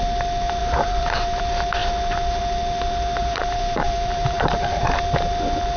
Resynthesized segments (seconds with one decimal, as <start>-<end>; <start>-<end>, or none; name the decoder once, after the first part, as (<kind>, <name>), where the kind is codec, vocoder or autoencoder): 0.6-1.4 (vocoder, BigVGAN v2); 3.2-4.8